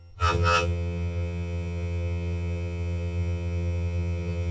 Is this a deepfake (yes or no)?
yes